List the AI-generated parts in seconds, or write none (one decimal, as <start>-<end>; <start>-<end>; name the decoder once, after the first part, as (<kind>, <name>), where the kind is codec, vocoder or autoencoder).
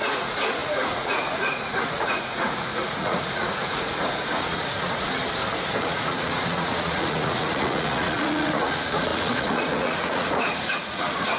0.0-5.2 (vocoder, Vocos); 5.8-11.4